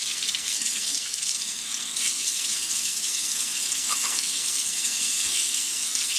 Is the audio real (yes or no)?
no